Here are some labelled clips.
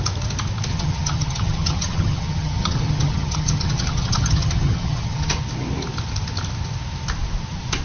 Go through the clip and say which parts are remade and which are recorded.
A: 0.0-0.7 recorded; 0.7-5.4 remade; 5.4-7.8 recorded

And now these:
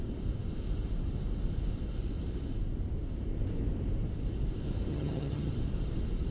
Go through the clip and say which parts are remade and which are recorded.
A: 0.0-4.9 recorded; 4.9-5.5 remade; 5.5-6.3 recorded

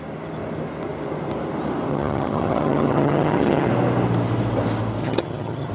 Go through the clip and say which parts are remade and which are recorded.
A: 0.0-1.9 recorded; 1.9-3.7 remade; 3.7-5.0 recorded; 5.0-5.7 remade